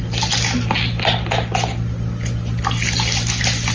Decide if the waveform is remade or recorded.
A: recorded